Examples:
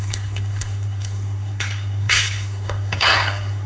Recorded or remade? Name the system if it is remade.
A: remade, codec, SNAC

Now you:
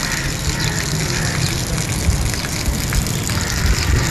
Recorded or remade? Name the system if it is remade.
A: recorded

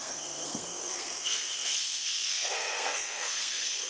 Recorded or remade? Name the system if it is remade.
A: remade, codec, SNAC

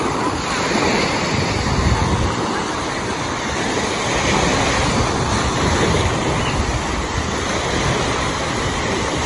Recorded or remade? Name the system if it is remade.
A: recorded